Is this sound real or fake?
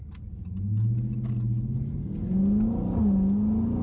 real